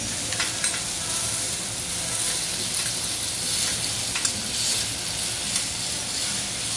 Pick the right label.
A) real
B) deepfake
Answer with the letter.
A